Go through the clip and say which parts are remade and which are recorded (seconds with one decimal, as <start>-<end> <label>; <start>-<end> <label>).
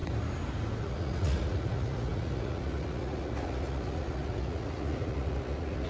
0.0-0.8 recorded; 0.8-5.9 remade